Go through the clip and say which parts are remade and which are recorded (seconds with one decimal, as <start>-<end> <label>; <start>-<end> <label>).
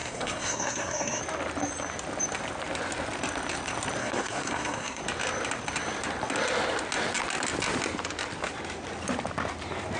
0.0-1.2 remade; 1.2-4.0 recorded; 4.0-5.0 remade; 5.0-10.0 recorded